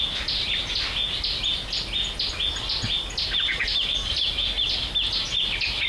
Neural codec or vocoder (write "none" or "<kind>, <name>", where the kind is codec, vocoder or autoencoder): none